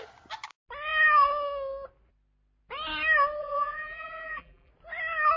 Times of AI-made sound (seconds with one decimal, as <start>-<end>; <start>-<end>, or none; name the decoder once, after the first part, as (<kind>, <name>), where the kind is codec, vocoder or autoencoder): 3.4-4.7 (vocoder, BigVGAN v2)